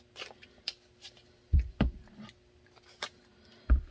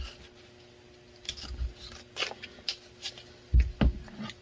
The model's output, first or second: first